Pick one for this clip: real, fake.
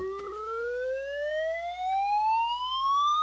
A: real